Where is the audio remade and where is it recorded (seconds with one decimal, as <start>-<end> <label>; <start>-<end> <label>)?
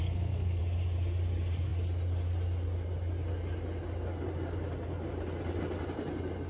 0.0-0.6 remade; 0.6-6.5 recorded